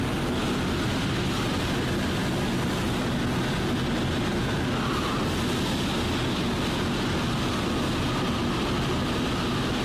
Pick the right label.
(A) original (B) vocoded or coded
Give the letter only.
A